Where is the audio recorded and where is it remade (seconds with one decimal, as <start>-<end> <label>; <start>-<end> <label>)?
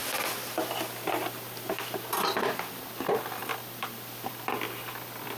0.0-5.4 recorded